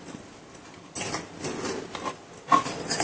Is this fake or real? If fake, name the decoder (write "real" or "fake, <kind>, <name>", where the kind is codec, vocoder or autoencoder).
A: real